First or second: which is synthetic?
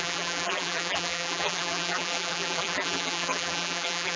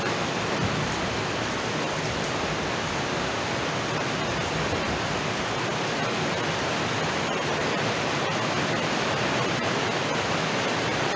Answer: first